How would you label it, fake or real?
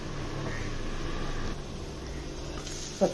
real